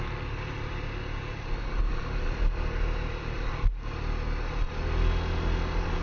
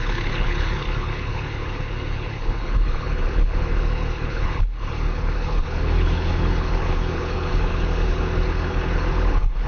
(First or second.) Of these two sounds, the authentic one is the first